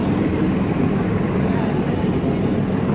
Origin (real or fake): real